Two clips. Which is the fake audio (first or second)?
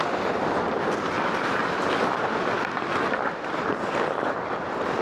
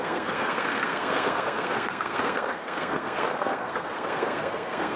second